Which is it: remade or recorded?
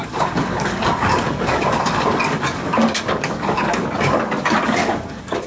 remade